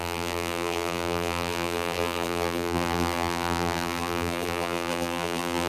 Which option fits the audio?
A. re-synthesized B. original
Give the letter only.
A